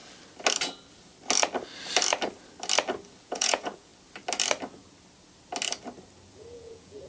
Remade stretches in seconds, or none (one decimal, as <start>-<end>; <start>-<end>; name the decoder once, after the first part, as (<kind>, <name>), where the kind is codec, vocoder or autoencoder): 3.2-3.9 (vocoder, Vocos); 6.3-7.1